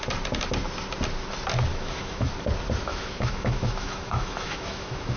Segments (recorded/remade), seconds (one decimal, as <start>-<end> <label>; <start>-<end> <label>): 0.0-1.7 recorded; 1.7-2.3 remade; 2.3-2.9 recorded; 2.9-5.2 remade